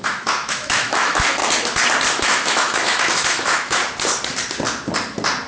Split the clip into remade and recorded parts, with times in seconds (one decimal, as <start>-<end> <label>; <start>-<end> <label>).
0.0-1.4 remade; 1.4-2.2 recorded; 2.2-3.8 remade; 3.8-5.5 recorded